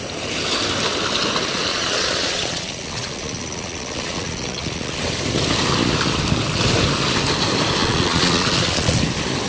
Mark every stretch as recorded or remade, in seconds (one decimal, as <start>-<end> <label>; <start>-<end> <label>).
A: 0.0-1.7 recorded; 1.7-5.0 remade; 5.0-7.8 recorded; 7.8-9.0 remade; 9.0-9.5 recorded